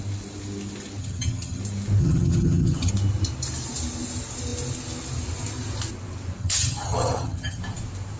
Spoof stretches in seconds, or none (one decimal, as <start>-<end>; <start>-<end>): 1.0-1.6; 2.0-2.9; 6.4-7.6